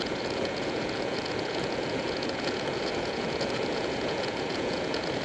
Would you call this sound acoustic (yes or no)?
no